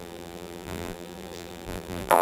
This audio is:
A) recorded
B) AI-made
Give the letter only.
B